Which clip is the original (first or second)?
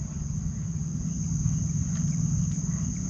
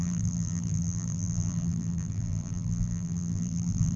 first